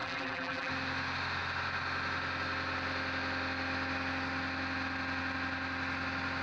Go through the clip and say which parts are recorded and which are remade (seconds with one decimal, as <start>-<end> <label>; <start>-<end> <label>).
0.0-0.7 remade; 0.7-6.4 recorded

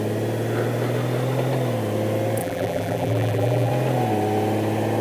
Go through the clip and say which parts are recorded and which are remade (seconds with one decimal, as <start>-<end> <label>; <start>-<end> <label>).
0.0-2.4 recorded; 2.4-3.7 remade; 3.7-5.0 recorded

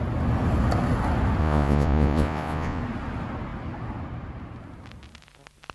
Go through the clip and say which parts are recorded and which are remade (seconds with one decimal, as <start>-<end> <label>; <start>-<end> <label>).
0.0-1.4 recorded; 1.4-2.8 remade; 2.8-5.7 recorded

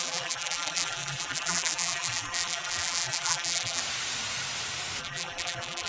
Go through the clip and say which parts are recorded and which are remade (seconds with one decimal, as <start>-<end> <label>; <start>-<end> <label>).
0.0-3.8 remade; 3.8-5.0 recorded; 5.0-5.9 remade